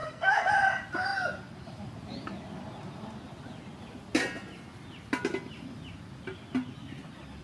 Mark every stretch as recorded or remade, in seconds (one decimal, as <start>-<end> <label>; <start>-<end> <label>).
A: 0.0-0.5 remade; 0.5-7.4 recorded